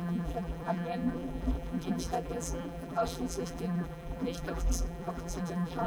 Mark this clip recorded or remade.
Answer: remade